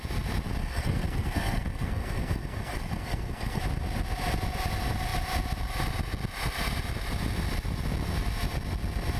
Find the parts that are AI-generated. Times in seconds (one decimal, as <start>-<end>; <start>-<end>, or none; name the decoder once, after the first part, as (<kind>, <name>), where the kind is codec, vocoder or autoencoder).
0.6-3.6 (codec, SNAC)